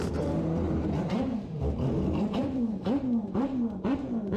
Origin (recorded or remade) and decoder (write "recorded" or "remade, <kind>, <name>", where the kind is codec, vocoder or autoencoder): remade, vocoder, BigVGAN v2